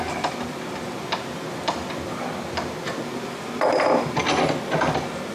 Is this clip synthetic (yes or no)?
no